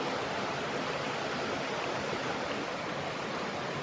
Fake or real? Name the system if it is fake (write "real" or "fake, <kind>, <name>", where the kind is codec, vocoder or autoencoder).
real